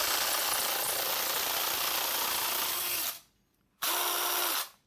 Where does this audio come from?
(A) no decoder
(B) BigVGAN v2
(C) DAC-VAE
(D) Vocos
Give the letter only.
A